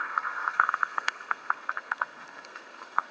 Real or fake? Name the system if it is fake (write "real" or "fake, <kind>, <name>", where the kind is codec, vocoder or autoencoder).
fake, codec, SNAC